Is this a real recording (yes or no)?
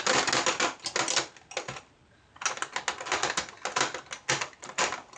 yes